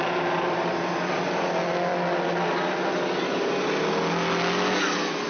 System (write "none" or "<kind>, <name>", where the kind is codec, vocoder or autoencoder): none